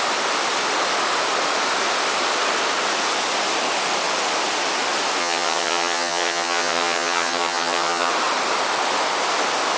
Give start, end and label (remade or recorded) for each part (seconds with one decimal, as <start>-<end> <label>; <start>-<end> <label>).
0.0-5.2 recorded; 5.2-8.1 remade; 8.1-9.8 recorded